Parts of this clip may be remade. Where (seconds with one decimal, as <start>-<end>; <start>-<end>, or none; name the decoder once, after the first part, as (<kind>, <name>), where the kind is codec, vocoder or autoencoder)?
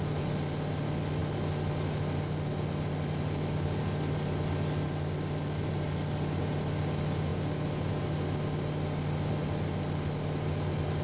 none